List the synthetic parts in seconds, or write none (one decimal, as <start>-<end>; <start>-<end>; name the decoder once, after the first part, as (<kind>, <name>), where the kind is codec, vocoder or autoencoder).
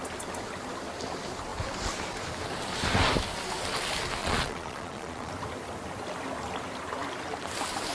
4.2-5.3 (vocoder, Vocos)